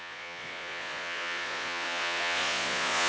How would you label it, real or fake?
fake